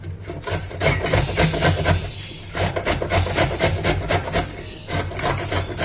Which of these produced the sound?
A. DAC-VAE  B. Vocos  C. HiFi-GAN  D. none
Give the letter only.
D